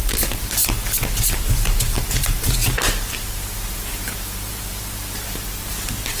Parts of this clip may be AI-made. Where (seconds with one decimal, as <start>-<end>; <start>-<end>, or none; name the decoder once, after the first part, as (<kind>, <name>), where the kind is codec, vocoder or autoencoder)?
0.0-2.6 (vocoder, BigVGAN v2); 3.1-6.2